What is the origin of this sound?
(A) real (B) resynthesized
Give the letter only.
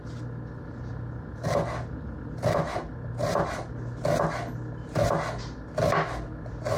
A